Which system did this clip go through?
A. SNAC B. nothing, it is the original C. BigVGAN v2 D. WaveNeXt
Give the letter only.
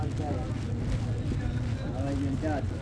B